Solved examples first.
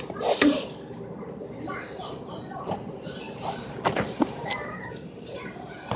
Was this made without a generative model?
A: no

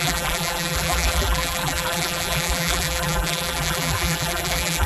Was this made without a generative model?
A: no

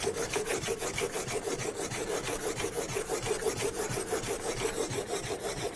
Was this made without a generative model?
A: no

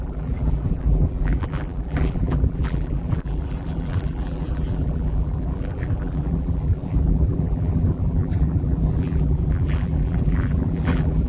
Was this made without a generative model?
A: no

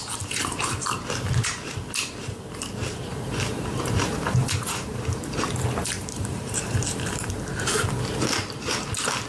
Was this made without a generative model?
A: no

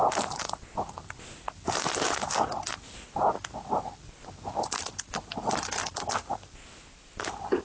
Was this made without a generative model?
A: yes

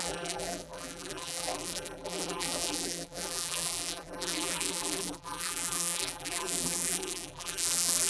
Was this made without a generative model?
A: no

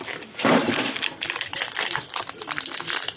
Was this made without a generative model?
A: no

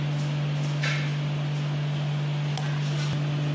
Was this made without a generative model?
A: yes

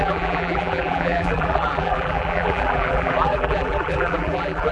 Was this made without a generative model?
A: no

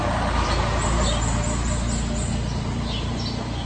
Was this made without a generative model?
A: yes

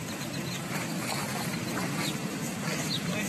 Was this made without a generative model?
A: yes